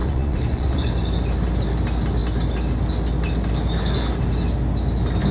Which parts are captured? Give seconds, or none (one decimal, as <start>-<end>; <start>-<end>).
0.9-5.3